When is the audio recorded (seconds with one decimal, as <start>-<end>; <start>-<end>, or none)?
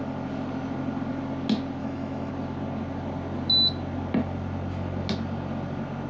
0.0-1.8; 2.3-6.1